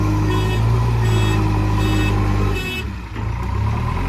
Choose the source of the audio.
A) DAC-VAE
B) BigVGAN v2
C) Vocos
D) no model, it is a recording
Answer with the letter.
D